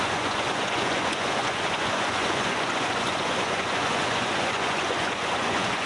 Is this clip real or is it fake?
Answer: fake